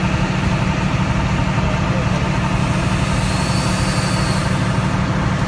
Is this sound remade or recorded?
recorded